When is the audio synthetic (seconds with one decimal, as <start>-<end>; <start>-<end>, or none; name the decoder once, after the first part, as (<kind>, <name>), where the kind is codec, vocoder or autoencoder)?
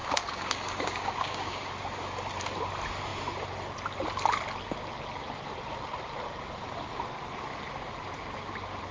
0.0-1.7 (codec, DAC)